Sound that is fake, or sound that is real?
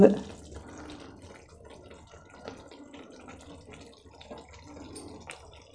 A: real